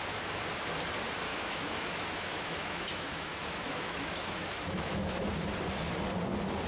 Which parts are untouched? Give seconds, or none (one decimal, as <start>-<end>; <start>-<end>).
0.0-1.3; 5.3-6.7